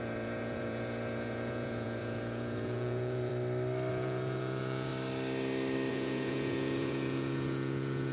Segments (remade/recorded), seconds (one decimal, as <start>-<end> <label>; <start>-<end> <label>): 0.0-3.3 remade; 3.3-3.9 recorded; 3.9-4.9 remade; 4.9-5.9 recorded; 5.9-8.1 remade